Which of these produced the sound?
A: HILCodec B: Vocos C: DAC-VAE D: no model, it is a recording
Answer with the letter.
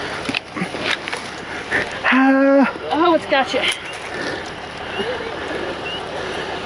D